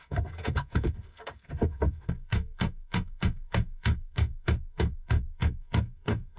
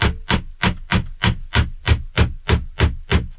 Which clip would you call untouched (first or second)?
second